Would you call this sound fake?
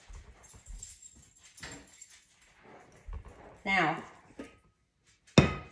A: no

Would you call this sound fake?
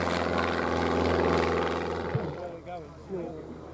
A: no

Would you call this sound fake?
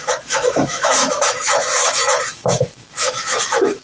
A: yes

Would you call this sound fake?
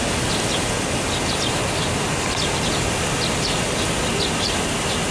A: no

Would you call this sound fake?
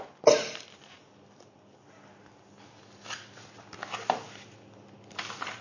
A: no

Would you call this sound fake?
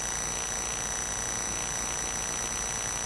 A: no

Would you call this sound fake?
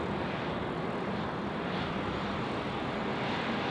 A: no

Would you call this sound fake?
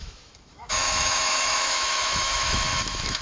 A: yes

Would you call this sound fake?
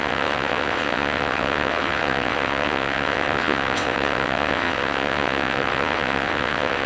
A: yes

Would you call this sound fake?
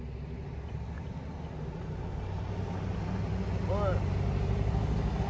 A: no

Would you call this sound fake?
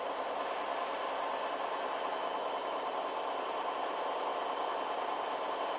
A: no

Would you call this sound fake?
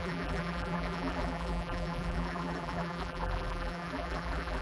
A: yes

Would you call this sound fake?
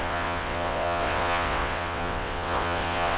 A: yes